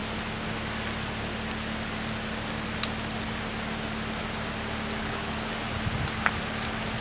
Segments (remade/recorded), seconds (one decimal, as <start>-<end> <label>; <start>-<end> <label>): 0.0-5.0 recorded; 5.0-5.5 remade; 5.5-7.0 recorded